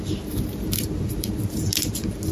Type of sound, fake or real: fake